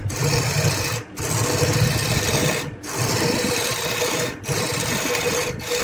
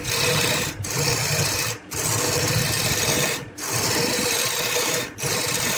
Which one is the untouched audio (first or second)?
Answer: first